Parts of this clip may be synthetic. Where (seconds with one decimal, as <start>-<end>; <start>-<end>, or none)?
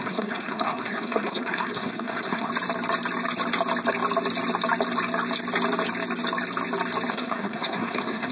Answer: 0.0-2.5; 7.1-8.3